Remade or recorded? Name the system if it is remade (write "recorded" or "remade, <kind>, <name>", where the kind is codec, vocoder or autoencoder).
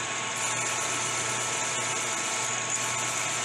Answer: recorded